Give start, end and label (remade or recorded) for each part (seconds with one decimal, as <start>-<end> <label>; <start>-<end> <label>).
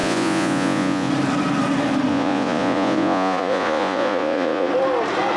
0.0-1.1 remade; 1.1-2.1 recorded; 2.1-4.7 remade; 4.7-5.4 recorded